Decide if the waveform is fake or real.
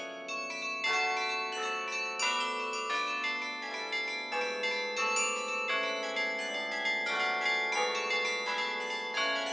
real